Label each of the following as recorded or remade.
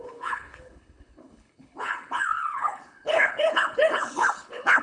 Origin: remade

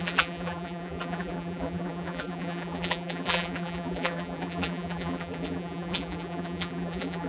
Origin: remade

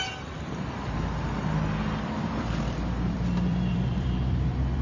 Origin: remade